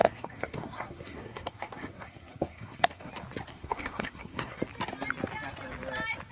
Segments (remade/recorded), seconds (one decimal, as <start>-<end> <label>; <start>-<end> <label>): 0.0-3.1 remade; 3.1-3.5 recorded; 3.5-4.6 remade; 4.6-6.3 recorded